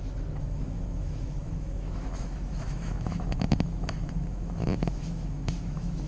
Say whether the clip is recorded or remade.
remade